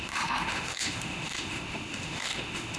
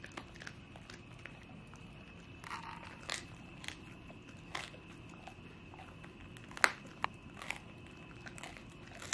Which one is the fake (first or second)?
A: first